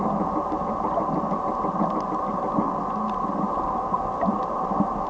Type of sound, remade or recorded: recorded